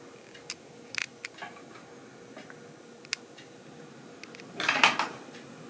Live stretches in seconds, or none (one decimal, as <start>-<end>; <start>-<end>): 0.0-5.7